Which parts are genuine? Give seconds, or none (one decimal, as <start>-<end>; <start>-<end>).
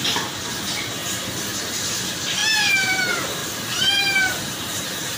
0.0-2.4; 3.0-3.4; 4.8-5.2